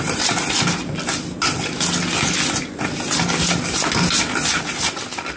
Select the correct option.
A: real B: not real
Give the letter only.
A